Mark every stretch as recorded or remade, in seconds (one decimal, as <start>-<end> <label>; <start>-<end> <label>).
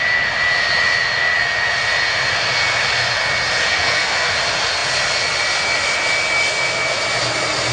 0.0-3.7 recorded; 3.7-4.3 remade; 4.3-7.7 recorded